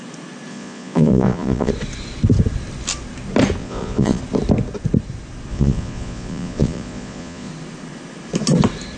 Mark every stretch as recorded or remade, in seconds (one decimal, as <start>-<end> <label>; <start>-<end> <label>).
0.0-0.5 recorded; 0.5-1.7 remade; 1.7-3.6 recorded; 3.6-4.2 remade; 4.2-5.5 recorded; 5.5-7.5 remade; 7.5-9.0 recorded